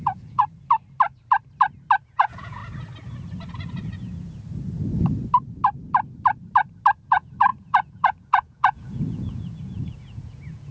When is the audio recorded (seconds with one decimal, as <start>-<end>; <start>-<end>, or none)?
0.4-2.0; 2.6-7.1